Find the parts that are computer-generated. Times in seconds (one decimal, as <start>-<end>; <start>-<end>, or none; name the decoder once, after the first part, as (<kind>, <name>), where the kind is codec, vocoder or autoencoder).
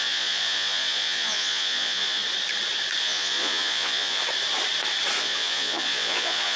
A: 0.0-2.2 (vocoder, Vocos); 3.0-4.2; 5.2-6.6